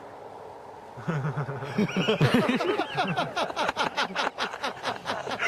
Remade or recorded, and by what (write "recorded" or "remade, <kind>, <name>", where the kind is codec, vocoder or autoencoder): recorded